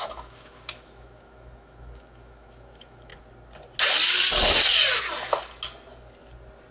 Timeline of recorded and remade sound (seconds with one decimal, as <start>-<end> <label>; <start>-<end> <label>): 0.0-3.1 remade; 3.1-6.7 recorded